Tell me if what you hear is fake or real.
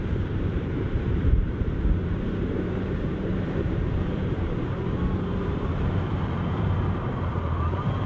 fake